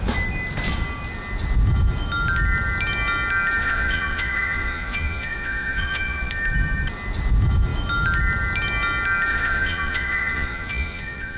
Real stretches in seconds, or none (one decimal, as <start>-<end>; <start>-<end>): 0.0-3.6; 6.3-9.3